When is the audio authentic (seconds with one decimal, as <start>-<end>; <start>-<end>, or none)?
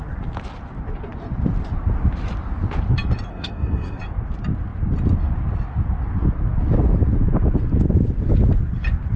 0.0-3.3; 4.0-9.2